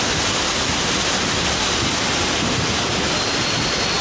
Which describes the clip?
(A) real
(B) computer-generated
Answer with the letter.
A